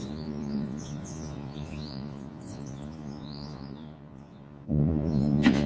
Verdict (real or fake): fake